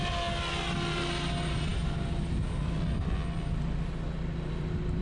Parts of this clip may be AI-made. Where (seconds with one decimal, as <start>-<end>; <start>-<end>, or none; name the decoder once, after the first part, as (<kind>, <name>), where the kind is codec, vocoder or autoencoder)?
none